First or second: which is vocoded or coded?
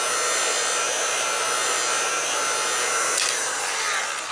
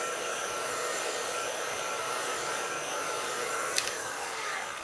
second